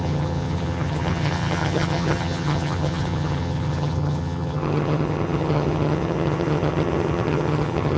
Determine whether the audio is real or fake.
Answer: fake